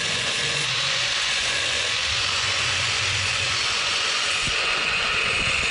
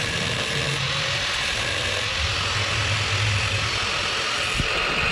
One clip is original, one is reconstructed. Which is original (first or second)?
second